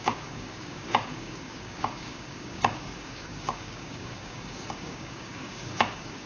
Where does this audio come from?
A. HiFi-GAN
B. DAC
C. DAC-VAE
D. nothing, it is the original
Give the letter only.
B